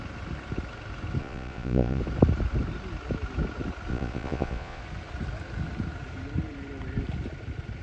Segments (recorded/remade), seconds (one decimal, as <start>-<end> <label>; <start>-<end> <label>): 0.0-1.2 recorded; 1.2-2.0 remade; 2.0-3.9 recorded; 3.9-4.8 remade; 4.8-7.8 recorded